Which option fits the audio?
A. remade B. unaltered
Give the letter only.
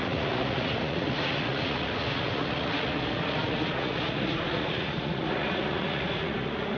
A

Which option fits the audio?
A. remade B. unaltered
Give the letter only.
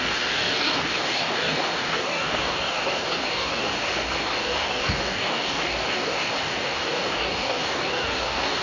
A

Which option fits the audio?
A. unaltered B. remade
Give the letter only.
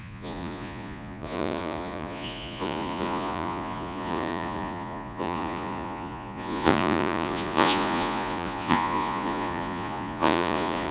B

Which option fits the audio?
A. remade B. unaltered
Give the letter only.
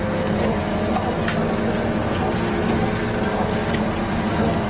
B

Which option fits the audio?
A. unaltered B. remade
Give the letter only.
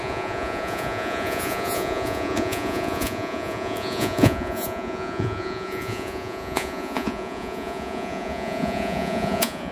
B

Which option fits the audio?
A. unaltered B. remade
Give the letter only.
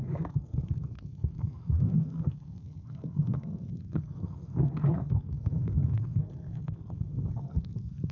B